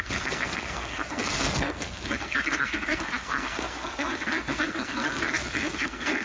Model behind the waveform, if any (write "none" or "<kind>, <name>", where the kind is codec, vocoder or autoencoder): codec, SNAC